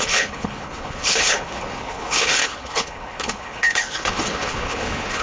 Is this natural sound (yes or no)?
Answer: no